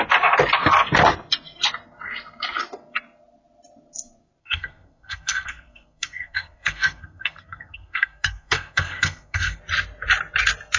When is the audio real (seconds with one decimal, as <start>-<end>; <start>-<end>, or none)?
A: 0.0-4.4; 9.6-10.8